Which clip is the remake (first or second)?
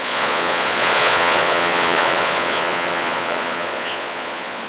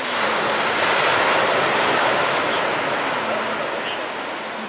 first